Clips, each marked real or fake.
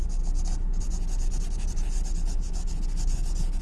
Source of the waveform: real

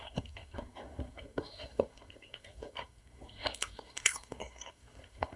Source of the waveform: fake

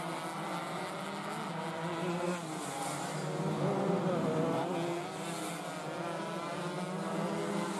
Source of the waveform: real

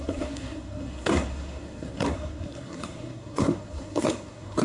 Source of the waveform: fake